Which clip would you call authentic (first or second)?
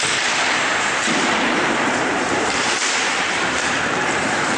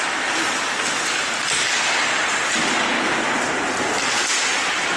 second